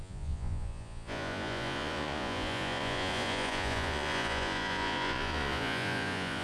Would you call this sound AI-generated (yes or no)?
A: yes